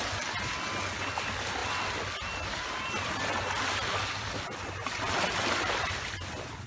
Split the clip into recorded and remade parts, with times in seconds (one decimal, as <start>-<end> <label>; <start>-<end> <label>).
0.0-6.7 recorded